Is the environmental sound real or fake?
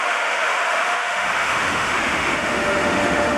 fake